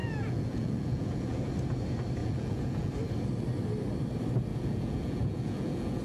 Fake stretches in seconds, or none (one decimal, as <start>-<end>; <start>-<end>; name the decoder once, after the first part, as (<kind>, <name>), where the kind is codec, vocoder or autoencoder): 0.0-1.5 (vocoder, Vocos); 2.2-2.9; 4.5-6.0